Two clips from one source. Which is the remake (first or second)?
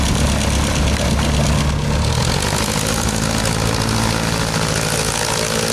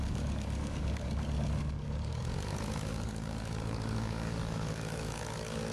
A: second